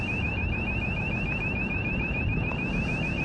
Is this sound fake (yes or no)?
yes